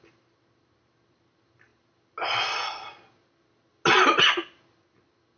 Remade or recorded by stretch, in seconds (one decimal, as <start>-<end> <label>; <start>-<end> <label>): 0.0-5.4 recorded